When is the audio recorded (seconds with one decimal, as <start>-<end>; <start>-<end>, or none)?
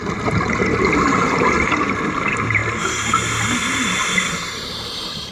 0.0-1.8; 2.6-4.1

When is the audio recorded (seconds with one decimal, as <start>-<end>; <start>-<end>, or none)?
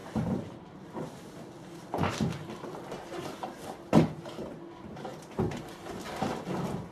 1.3-2.1; 2.7-5.1; 5.6-6.9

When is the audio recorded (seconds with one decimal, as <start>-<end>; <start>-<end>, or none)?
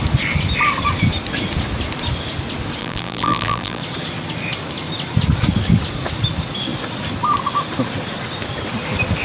0.0-2.8; 3.8-9.2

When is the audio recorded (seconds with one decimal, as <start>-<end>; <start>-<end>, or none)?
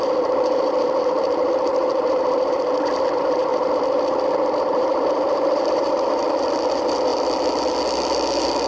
3.5-4.2; 7.1-8.7